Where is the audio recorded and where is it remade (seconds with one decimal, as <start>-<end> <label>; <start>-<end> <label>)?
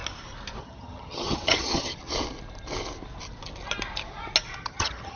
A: 0.0-0.6 recorded; 0.6-2.0 remade; 2.0-4.6 recorded; 4.6-5.2 remade